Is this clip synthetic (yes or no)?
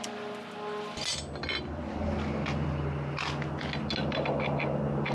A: no